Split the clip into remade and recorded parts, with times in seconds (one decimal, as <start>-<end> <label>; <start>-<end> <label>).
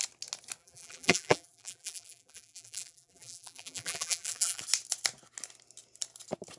0.0-0.6 recorded; 0.6-4.6 remade; 4.6-6.6 recorded